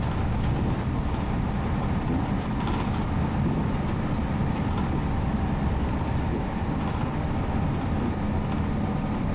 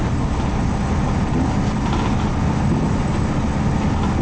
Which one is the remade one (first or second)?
first